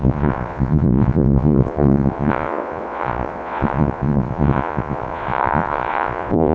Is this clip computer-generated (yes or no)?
yes